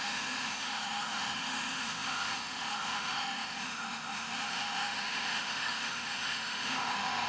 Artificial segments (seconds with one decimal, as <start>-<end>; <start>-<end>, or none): 0.0-7.3